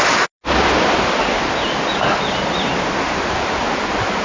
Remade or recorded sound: recorded